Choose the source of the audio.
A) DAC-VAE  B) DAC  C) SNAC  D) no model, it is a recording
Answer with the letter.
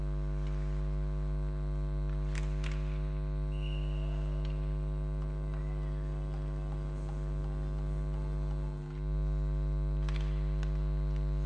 D